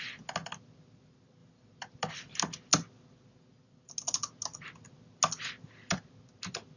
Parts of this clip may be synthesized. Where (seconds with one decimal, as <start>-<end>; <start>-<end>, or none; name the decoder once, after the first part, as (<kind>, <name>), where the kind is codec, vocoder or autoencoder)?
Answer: none